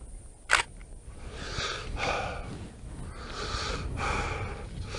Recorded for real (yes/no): yes